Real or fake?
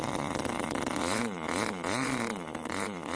fake